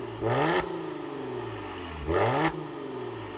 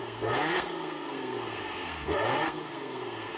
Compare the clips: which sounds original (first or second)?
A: first